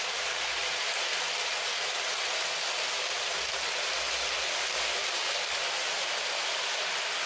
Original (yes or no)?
yes